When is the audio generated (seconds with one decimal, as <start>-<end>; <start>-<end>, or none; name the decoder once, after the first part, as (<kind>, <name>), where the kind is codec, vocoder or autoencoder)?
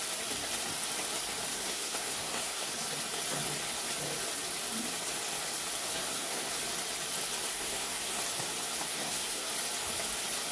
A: 1.5-2.7 (codec, SNAC); 5.8-6.6; 7.5-8.2; 8.9-9.5